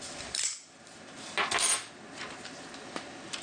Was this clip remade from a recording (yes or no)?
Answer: no